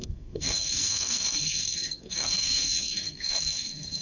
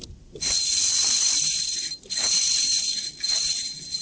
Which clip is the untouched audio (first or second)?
second